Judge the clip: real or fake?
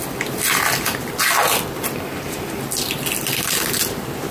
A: real